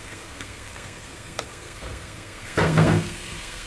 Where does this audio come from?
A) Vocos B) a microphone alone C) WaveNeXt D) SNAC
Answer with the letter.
D